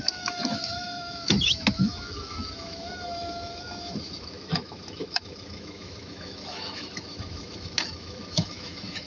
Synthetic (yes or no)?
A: yes